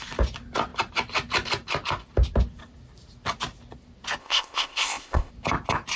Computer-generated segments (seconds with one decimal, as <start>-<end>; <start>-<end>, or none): 4.2-5.3